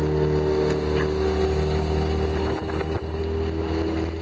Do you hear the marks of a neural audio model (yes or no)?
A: no